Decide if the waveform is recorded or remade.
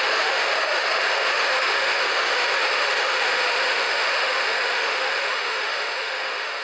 remade